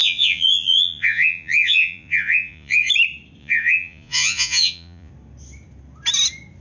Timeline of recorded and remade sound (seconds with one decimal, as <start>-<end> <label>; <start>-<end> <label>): 0.0-2.9 remade; 2.9-3.4 recorded; 3.4-5.1 remade; 5.1-6.6 recorded